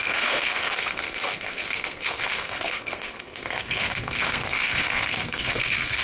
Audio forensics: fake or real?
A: fake